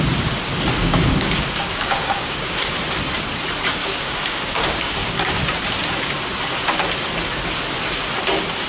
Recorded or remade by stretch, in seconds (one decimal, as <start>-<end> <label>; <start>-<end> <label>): 0.0-0.8 recorded; 0.8-2.5 remade; 2.5-3.8 recorded; 3.8-5.3 remade; 5.3-8.7 recorded